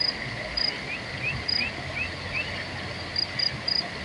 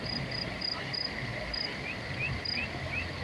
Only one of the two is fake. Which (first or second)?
second